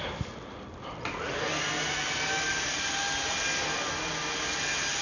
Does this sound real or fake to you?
real